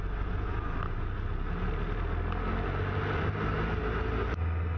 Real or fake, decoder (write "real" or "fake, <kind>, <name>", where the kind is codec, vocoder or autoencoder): real